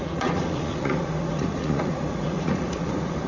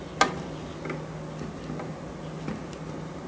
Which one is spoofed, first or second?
first